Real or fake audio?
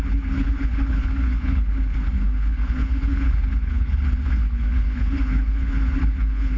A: fake